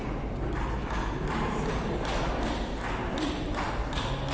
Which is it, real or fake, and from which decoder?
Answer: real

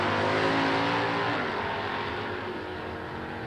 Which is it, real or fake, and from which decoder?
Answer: real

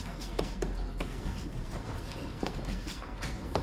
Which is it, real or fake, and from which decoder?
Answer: fake, codec, SNAC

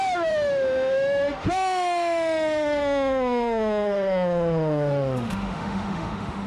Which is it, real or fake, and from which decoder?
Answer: fake, autoencoder, DAC-VAE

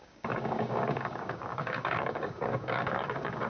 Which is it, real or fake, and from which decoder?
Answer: fake, codec, DAC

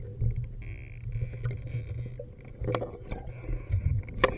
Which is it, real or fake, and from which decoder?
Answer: real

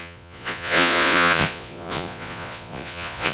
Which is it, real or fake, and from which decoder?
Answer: fake, vocoder, Vocos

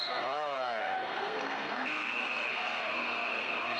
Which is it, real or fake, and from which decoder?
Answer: fake, codec, SNAC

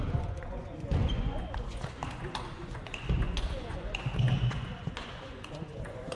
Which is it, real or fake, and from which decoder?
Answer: fake, vocoder, Vocos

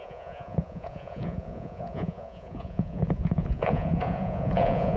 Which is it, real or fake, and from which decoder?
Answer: fake, vocoder, Vocos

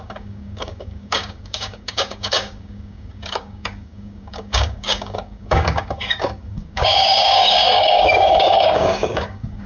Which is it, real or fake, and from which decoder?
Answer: fake, codec, DAC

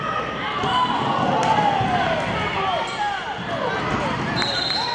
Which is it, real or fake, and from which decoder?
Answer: real